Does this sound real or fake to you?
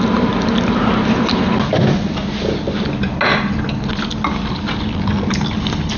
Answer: real